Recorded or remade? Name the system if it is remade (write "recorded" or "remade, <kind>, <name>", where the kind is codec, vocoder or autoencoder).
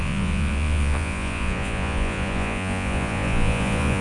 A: remade, vocoder, Vocos